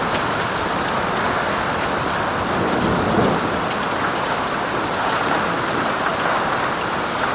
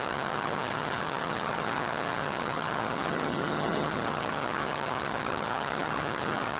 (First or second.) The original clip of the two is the first